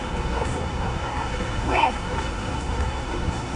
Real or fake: fake